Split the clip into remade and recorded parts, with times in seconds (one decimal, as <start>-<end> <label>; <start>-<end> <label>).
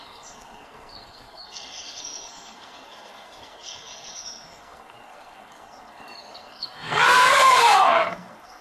0.0-8.6 remade